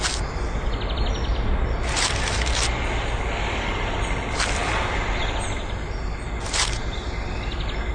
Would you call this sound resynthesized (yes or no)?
no